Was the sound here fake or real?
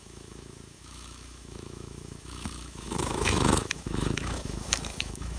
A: fake